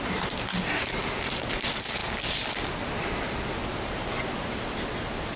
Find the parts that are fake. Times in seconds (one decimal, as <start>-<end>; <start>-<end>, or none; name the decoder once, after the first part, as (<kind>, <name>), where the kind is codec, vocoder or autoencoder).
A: none